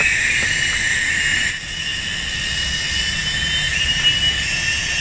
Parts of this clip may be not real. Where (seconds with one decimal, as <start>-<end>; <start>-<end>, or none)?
none